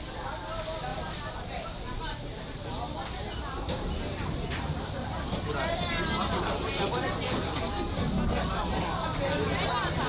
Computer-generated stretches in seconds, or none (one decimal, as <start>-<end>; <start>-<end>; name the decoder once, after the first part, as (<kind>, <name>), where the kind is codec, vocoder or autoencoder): 0.9-5.3 (vocoder, BigVGAN v2)